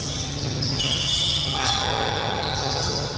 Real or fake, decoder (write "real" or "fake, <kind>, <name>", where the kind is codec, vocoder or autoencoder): fake, vocoder, HiFi-GAN